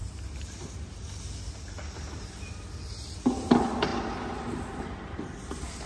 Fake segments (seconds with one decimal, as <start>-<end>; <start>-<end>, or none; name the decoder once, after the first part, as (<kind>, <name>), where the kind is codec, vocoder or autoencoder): none